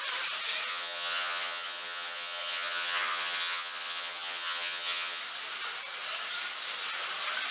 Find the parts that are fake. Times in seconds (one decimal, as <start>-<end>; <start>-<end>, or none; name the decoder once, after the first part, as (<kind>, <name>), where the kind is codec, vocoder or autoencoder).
0.7-5.2 (vocoder, HiFi-GAN)